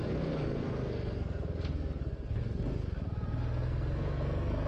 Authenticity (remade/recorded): remade